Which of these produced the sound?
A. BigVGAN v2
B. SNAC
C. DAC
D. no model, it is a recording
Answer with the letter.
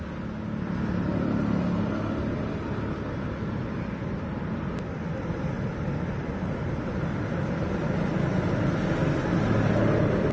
D